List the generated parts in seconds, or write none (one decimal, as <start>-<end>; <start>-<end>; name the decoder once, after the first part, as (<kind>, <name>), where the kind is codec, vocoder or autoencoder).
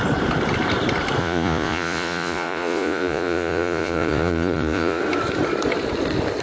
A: 1.2-5.0 (vocoder, Vocos)